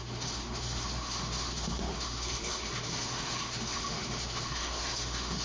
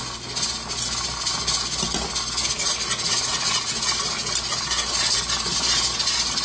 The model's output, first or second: first